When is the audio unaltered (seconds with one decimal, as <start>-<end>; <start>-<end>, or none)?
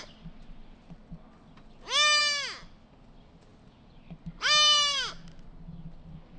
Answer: 0.0-6.4